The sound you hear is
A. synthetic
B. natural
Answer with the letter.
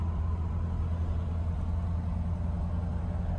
B